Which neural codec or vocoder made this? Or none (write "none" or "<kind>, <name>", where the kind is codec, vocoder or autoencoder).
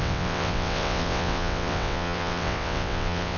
vocoder, WaveNeXt